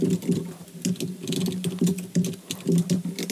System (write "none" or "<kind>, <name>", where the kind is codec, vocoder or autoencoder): none